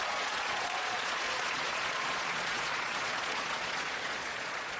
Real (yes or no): no